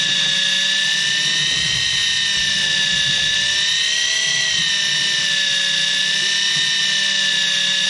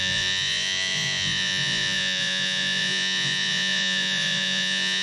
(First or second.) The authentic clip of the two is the first